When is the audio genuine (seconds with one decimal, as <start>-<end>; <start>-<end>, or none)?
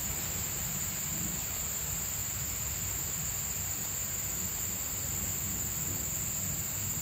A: 1.0-7.0